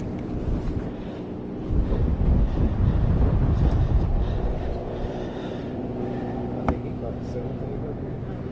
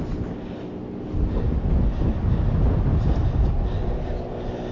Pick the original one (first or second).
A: second